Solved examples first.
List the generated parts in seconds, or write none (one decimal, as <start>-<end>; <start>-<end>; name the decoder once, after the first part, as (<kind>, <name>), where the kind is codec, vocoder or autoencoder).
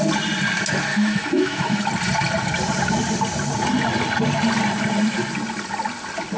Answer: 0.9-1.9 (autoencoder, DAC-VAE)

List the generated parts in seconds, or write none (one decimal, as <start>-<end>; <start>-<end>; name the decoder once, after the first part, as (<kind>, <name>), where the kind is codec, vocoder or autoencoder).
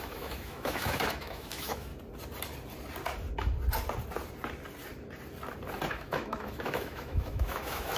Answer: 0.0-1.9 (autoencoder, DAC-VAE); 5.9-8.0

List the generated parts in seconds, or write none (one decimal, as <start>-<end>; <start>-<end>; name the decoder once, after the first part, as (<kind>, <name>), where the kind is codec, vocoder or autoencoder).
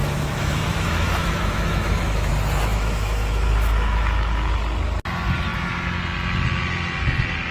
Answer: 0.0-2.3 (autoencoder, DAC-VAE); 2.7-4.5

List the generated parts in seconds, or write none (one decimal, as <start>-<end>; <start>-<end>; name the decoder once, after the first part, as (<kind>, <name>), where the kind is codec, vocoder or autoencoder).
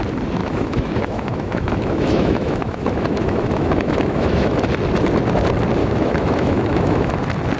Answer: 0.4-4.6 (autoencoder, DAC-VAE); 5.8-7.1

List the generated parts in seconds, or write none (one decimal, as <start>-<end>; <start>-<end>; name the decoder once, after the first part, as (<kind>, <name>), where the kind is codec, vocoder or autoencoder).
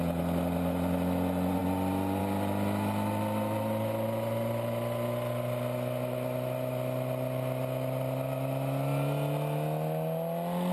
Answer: none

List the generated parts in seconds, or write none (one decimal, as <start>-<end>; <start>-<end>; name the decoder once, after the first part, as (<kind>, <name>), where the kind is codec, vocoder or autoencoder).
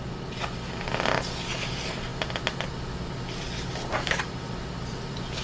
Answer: none